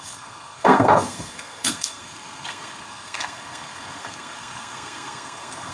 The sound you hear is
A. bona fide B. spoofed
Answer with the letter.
B